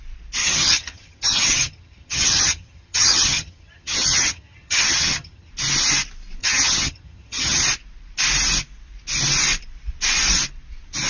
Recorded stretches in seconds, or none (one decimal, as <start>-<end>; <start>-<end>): 0.0-0.4; 5.5-6.4; 7.6-11.1